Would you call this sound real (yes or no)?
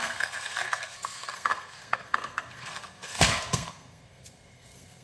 no